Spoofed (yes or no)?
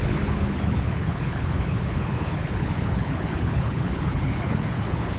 yes